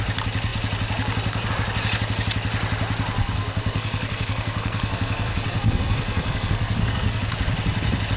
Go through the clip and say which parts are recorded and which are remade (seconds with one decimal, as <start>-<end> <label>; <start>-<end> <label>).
0.0-3.2 recorded; 3.2-7.2 remade; 7.2-8.2 recorded